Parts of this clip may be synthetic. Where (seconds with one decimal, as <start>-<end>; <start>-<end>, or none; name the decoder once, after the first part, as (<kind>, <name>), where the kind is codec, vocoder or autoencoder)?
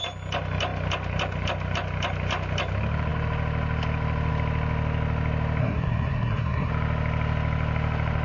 5.6-6.7 (codec, SNAC)